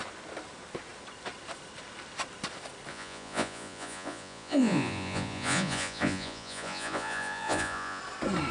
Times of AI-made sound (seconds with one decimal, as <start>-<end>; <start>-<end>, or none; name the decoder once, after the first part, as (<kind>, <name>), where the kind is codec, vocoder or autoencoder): 2.9-8.0 (vocoder, Vocos)